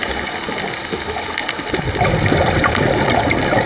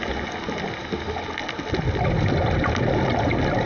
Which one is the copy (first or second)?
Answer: first